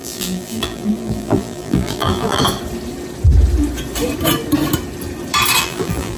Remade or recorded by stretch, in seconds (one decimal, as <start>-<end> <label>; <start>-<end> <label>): 0.0-2.4 remade; 2.4-5.6 recorded; 5.6-6.2 remade